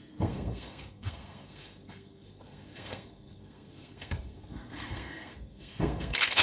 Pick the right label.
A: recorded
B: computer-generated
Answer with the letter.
B